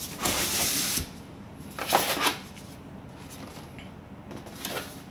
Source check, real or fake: real